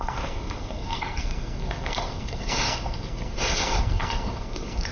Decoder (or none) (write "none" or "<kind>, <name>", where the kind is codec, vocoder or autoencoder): codec, SNAC